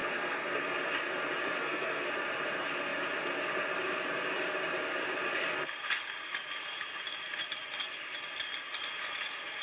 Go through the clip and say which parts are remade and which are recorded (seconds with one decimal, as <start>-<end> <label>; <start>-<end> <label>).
0.0-0.6 remade; 0.6-1.6 recorded; 1.6-2.1 remade; 2.1-9.6 recorded